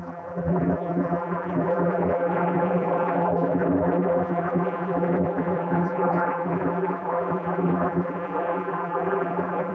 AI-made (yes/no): yes